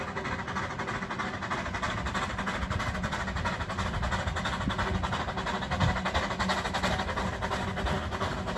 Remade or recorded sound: recorded